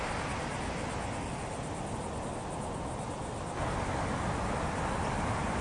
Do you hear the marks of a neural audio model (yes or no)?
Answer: no